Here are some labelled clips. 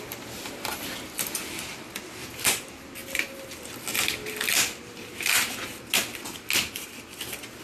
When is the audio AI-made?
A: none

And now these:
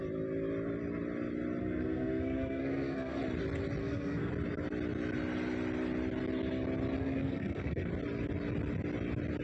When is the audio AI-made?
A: 1.6-3.2 (codec, SNAC); 3.8-4.3; 7.0-7.9

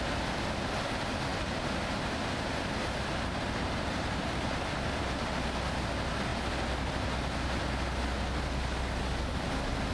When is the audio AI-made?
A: 1.3-4.7 (vocoder, BigVGAN v2)